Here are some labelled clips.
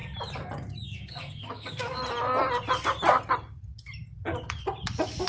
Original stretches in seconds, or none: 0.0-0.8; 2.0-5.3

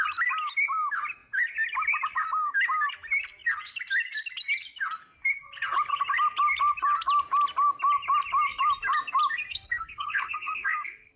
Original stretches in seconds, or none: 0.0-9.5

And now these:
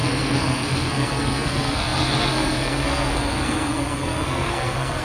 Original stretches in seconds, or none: none